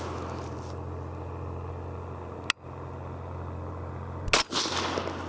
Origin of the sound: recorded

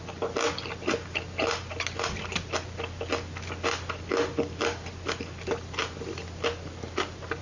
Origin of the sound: recorded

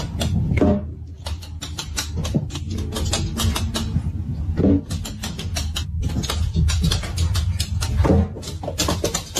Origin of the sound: recorded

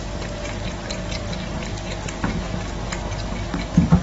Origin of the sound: recorded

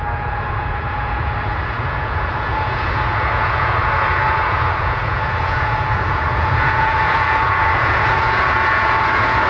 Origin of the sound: remade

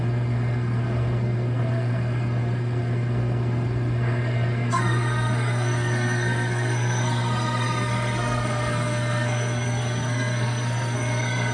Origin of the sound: remade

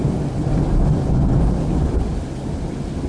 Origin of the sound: recorded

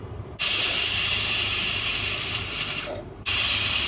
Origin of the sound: remade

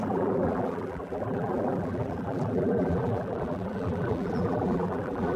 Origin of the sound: remade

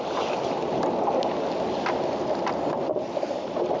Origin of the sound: recorded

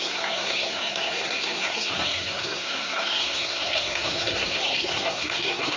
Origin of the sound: remade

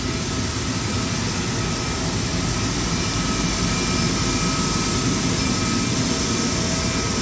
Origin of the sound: recorded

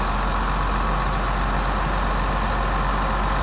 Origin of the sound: recorded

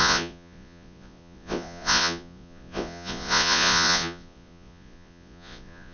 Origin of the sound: remade